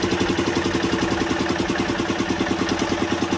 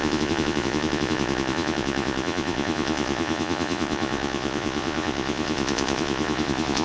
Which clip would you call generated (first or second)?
second